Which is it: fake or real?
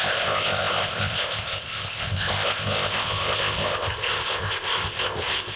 fake